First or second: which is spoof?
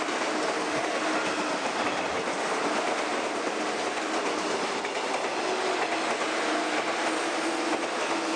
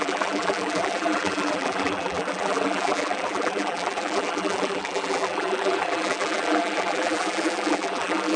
second